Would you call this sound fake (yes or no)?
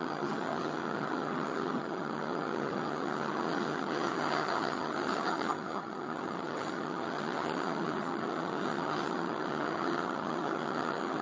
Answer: yes